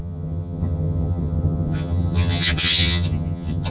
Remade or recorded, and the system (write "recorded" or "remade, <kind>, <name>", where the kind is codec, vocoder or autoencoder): remade, vocoder, HiFi-GAN